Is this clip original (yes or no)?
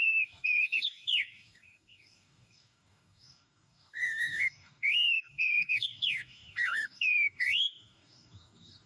no